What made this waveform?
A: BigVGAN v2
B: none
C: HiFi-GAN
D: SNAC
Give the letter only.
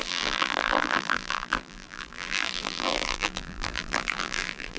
A